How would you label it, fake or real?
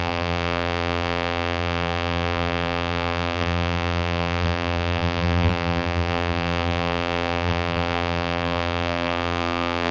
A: fake